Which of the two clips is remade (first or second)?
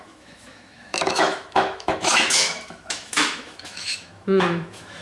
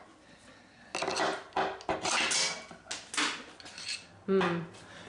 first